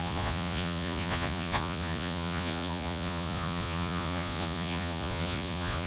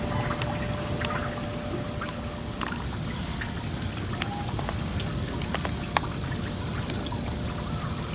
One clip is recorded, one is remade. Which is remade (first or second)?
first